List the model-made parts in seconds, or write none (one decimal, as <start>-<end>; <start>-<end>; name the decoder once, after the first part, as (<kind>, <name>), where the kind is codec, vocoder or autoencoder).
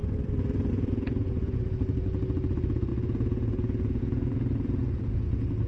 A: 0.7-5.7 (vocoder, Vocos)